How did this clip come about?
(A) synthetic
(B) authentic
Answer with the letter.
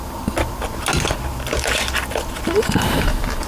B